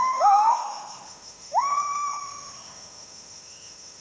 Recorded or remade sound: remade